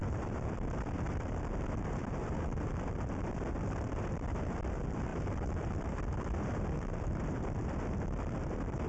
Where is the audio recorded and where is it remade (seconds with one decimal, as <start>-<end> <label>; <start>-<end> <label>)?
0.0-8.9 remade